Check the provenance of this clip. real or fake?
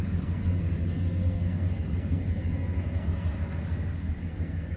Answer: fake